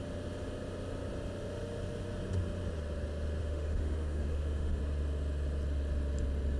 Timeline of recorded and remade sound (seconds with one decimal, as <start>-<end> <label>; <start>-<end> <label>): 0.0-3.4 recorded; 3.4-4.8 remade; 4.8-6.6 recorded